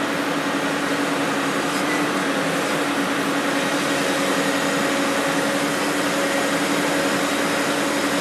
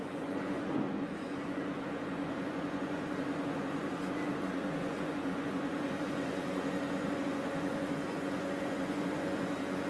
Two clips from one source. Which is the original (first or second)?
first